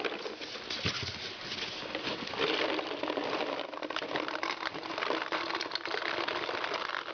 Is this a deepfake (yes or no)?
no